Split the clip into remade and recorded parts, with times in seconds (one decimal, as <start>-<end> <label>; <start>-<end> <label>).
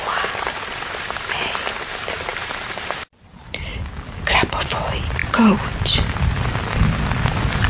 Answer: 0.0-7.7 recorded